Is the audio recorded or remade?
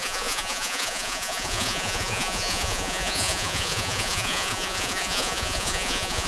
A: remade